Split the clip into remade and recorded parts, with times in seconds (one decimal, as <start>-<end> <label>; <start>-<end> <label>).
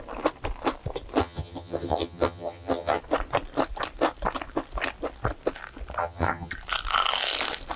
0.0-1.2 recorded; 1.2-3.0 remade; 3.0-6.0 recorded; 6.0-6.5 remade; 6.5-7.8 recorded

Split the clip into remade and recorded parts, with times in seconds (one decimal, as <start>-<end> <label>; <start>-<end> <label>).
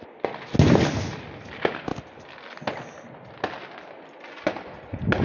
0.0-5.2 recorded